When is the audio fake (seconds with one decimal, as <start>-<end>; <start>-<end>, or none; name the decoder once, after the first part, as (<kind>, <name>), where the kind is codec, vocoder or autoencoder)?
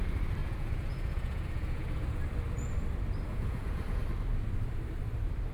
0.4-2.2 (vocoder, Vocos); 3.3-4.0